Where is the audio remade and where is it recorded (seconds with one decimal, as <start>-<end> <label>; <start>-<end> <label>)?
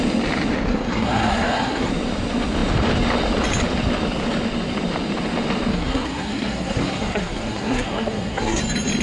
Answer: 0.0-0.7 recorded; 0.7-1.9 remade; 1.9-5.7 recorded; 5.7-8.6 remade; 8.6-9.0 recorded